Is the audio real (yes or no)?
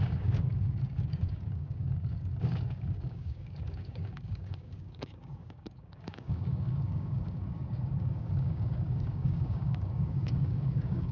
no